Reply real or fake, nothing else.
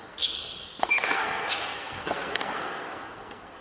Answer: fake